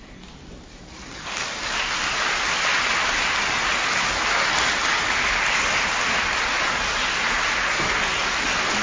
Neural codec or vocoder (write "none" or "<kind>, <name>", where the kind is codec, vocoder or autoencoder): none